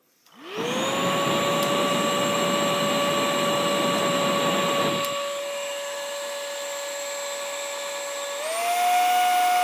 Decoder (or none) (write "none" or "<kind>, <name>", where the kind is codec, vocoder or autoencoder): none